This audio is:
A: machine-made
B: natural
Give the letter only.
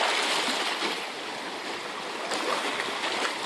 B